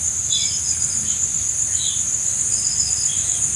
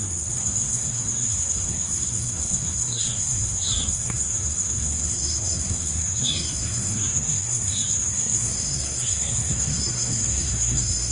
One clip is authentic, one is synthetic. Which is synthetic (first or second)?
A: second